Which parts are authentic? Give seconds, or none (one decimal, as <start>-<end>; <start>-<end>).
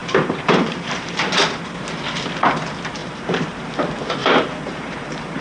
1.4-3.0; 3.7-4.2